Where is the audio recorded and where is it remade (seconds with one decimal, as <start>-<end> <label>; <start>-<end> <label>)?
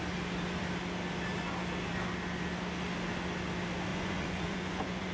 0.0-3.9 recorded; 3.9-5.1 remade